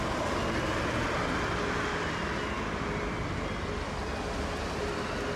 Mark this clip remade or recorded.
recorded